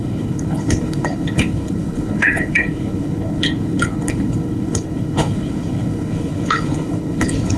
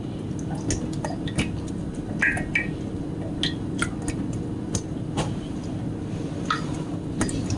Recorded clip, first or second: second